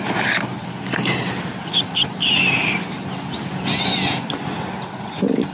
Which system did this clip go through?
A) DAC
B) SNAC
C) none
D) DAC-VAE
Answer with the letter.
C